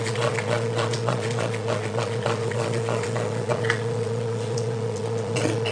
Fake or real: fake